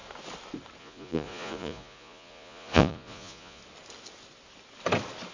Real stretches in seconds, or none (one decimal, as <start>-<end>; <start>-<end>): 0.0-0.8; 3.6-5.3

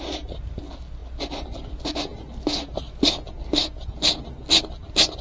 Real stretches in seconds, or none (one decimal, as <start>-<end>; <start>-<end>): 0.0-5.2